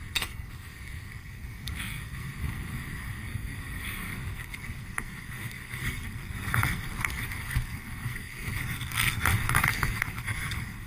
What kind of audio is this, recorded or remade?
remade